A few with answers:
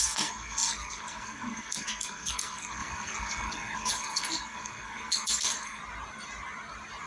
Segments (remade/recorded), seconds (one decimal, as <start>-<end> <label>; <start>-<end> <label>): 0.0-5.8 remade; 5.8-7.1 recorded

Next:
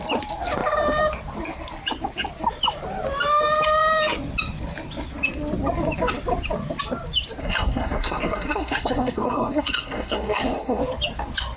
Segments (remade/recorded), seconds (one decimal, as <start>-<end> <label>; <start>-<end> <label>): 0.0-7.4 recorded; 7.4-10.8 remade; 10.8-11.6 recorded

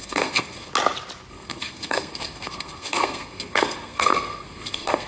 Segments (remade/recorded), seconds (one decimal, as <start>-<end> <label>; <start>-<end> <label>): 0.0-0.7 remade; 0.7-1.3 recorded; 1.3-5.1 remade

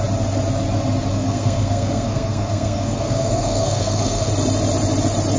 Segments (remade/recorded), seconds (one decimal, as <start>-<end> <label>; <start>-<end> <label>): 0.0-1.1 recorded; 1.1-4.3 remade; 4.3-5.4 recorded